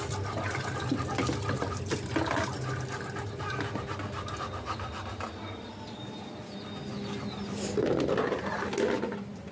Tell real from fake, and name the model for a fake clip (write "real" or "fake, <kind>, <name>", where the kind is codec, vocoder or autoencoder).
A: real